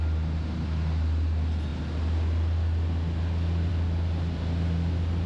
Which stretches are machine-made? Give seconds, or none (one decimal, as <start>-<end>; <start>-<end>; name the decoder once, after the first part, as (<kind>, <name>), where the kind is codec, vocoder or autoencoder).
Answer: none